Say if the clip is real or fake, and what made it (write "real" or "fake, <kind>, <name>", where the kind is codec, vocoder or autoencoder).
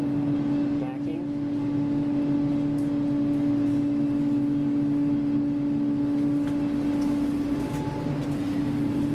real